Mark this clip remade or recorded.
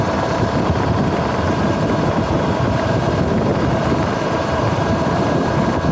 remade